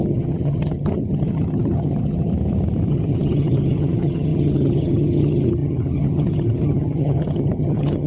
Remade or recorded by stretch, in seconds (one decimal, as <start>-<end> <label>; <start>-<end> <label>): 0.0-2.3 remade; 2.3-2.9 recorded; 2.9-8.1 remade